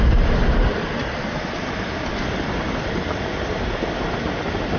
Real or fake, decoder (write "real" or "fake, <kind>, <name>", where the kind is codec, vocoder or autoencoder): real